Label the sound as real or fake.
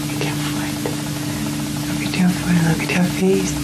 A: real